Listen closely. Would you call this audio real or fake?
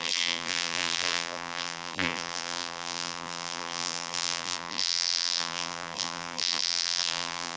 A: fake